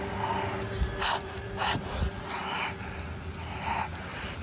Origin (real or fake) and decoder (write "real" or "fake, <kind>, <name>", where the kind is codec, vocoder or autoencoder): real